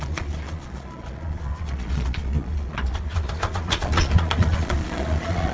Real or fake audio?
fake